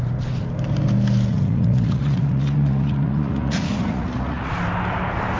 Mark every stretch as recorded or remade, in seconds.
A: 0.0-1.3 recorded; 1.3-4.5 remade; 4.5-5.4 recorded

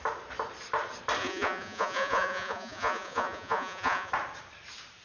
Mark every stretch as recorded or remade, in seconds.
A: 0.0-1.2 recorded; 1.2-4.1 remade; 4.1-5.0 recorded

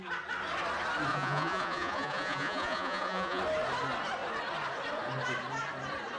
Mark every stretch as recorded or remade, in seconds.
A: 0.0-1.1 recorded; 1.1-3.4 remade; 3.4-6.2 recorded